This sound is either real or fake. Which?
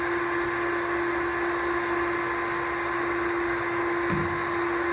real